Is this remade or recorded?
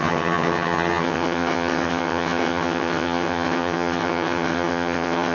remade